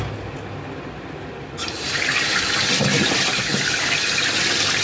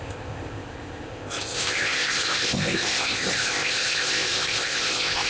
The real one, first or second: first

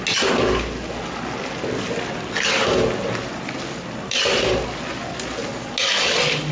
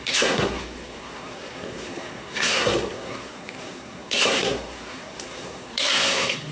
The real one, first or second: first